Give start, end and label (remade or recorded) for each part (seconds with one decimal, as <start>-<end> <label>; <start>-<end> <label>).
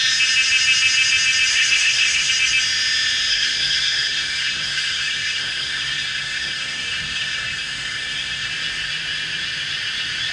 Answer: 0.0-1.5 recorded; 1.5-2.3 remade; 2.3-3.3 recorded; 3.3-8.5 remade; 8.5-10.3 recorded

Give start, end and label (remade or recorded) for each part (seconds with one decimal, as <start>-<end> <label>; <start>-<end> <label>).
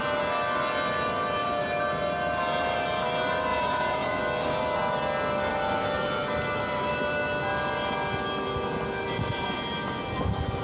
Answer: 0.0-3.5 recorded; 3.5-4.2 remade; 4.2-10.6 recorded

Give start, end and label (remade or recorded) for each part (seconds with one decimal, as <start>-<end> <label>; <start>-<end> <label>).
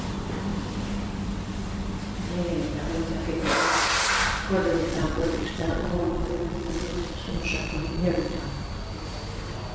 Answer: 0.0-4.9 recorded; 4.9-8.4 remade; 8.4-9.7 recorded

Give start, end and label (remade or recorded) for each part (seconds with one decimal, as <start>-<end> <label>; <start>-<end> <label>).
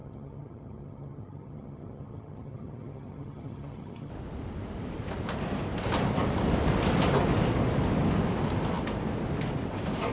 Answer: 0.0-4.1 remade; 4.1-10.1 recorded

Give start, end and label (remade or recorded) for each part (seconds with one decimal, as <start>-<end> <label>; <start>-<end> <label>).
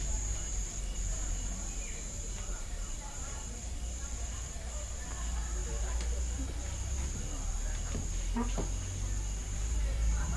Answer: 0.0-4.9 remade; 4.9-9.4 recorded; 9.4-10.4 remade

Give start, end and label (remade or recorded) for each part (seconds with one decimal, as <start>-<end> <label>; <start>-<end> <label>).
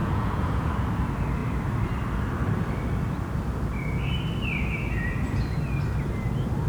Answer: 0.0-0.7 remade; 0.7-6.7 recorded